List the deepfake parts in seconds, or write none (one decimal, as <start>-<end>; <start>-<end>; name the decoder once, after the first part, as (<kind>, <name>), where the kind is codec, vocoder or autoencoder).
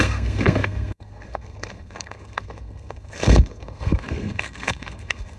0.0-5.4 (codec, SNAC)